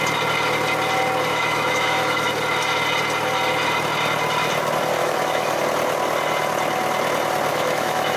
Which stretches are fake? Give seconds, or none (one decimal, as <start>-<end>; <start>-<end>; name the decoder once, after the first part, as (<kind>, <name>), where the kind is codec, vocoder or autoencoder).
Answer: 1.3-2.3 (autoencoder, DAC-VAE); 5.0-5.6; 7.5-8.2

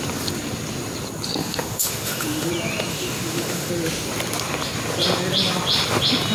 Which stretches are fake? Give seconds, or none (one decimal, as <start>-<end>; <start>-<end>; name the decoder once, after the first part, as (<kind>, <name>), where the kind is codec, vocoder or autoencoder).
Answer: 1.4-2.5 (autoencoder, DAC-VAE); 2.9-3.7

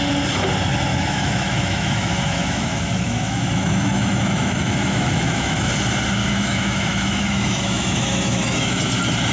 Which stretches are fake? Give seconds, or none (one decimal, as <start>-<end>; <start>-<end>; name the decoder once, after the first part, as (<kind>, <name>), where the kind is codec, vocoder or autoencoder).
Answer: 0.9-5.7 (autoencoder, DAC-VAE); 6.2-8.7